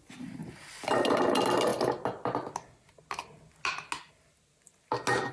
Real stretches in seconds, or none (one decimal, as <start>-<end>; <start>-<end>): 0.0-5.3